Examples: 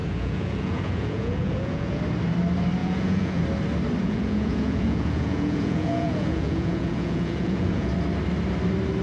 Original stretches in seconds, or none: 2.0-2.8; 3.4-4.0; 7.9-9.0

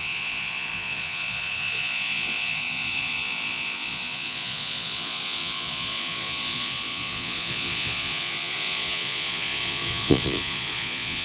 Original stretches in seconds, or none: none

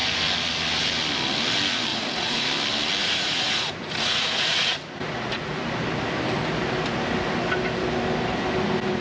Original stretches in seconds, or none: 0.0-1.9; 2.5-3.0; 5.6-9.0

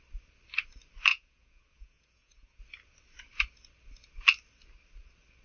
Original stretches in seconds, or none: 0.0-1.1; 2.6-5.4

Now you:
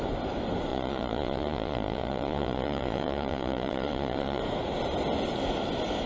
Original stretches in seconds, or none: 0.0-0.7; 4.4-6.1

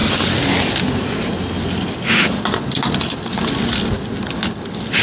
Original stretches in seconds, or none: 0.0-5.0